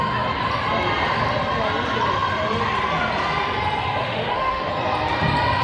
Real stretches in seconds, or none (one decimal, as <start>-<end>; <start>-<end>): 0.0-4.0; 4.7-5.6